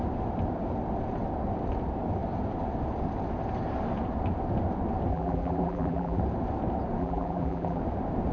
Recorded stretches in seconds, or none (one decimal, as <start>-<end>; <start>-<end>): 0.0-5.1; 6.2-7.0; 7.8-8.3